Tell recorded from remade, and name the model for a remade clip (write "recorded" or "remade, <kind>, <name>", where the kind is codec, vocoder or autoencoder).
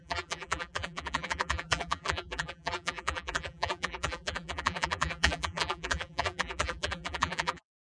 remade, vocoder, BigVGAN v2